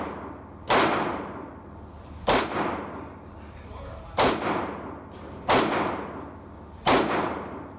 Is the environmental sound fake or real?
real